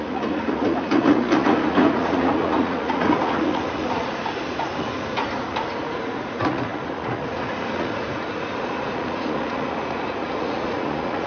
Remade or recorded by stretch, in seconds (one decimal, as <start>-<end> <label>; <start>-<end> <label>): 0.0-11.3 remade